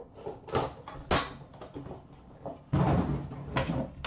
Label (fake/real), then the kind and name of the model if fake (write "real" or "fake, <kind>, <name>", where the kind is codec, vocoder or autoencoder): real